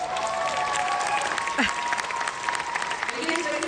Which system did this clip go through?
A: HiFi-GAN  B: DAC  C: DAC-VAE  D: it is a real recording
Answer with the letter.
D